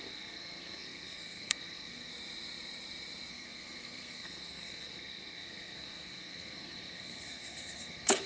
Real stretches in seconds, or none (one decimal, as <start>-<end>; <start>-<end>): 2.1-3.3